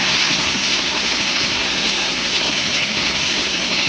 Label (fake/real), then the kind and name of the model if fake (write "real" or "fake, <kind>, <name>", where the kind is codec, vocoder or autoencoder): fake, codec, SNAC